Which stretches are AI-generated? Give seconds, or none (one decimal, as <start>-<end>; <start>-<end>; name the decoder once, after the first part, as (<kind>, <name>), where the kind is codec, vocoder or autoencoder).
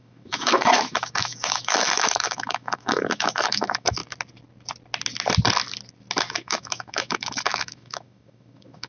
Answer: 0.0-4.0 (autoencoder, DAC-VAE); 6.2-8.9